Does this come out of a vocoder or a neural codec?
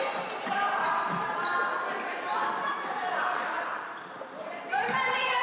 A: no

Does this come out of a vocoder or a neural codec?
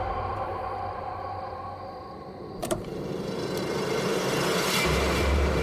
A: yes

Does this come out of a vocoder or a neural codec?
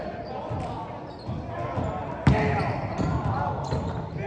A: no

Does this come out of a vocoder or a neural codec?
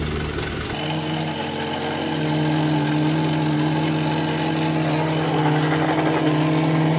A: no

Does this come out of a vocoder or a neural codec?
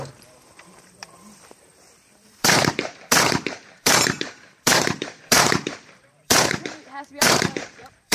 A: yes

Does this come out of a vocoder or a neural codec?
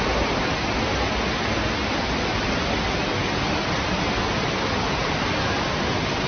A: no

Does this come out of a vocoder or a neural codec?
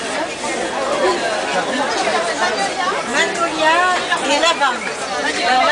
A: no